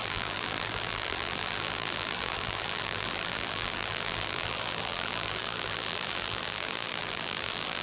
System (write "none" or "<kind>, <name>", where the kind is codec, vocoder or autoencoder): vocoder, BigVGAN v2